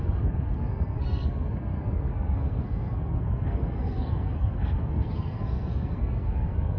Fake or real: fake